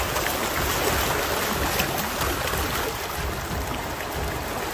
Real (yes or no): yes